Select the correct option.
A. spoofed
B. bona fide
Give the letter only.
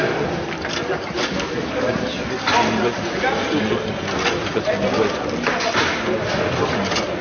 B